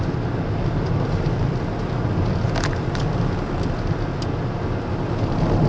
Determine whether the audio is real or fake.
real